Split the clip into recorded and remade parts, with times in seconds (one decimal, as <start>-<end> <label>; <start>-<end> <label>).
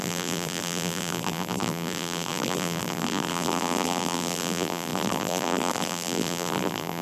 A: 0.0-7.0 remade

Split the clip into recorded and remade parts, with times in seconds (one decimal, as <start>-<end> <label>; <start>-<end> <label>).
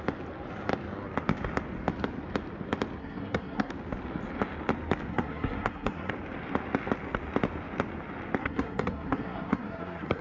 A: 0.0-3.0 recorded; 3.0-3.7 remade; 3.7-5.1 recorded; 5.1-6.1 remade; 6.1-8.4 recorded; 8.4-10.2 remade